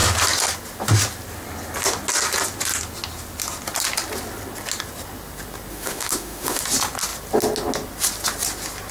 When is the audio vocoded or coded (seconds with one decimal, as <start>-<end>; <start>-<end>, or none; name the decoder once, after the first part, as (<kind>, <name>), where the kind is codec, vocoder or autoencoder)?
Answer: 5.7-6.6 (autoencoder, DAC-VAE)

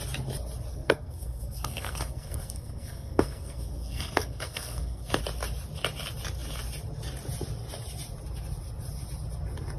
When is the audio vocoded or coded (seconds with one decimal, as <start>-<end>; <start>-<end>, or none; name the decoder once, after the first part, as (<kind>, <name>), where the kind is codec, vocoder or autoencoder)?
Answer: 0.7-5.2 (codec, SNAC)

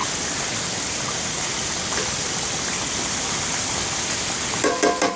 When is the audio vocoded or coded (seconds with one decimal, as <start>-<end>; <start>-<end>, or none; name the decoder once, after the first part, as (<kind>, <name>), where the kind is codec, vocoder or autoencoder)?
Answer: 0.0-3.1 (vocoder, BigVGAN v2)